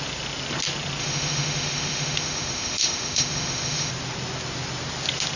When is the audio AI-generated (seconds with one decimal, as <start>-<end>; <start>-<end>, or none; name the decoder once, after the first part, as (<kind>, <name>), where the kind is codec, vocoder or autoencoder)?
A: 1.0-3.9 (autoencoder, DAC-VAE)